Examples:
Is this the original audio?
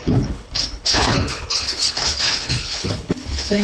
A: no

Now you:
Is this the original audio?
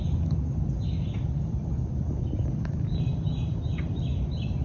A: yes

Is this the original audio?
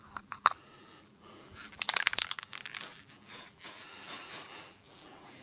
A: no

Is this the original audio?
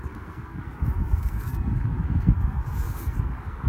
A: no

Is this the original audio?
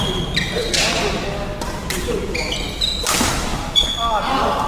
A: yes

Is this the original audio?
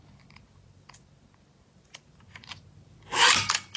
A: no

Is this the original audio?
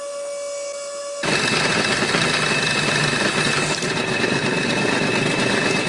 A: yes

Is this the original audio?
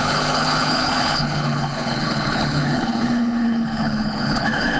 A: no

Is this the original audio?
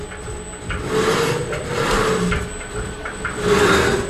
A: yes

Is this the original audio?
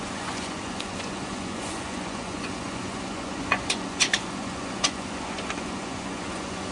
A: no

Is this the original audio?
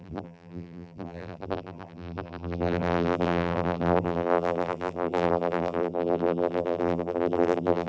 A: no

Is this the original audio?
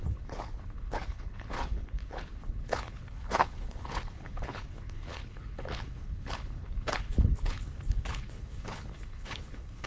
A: no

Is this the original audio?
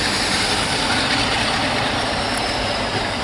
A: yes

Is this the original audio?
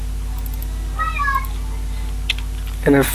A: yes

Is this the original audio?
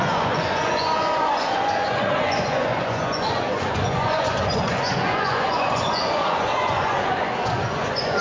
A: no